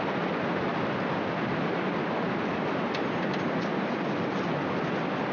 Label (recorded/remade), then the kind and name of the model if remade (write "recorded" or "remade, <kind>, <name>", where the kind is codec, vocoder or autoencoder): recorded